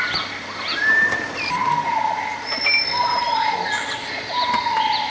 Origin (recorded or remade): recorded